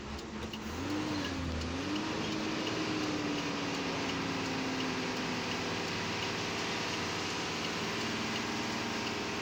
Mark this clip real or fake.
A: real